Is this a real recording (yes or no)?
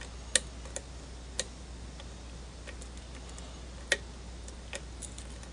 yes